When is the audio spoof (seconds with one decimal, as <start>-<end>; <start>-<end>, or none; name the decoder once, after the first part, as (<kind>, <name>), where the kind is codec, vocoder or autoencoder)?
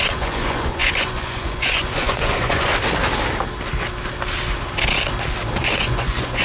0.0-2.7 (vocoder, Vocos); 5.6-6.4